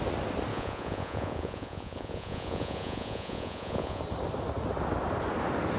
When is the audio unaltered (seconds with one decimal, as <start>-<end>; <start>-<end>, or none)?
0.0-0.5; 4.0-5.8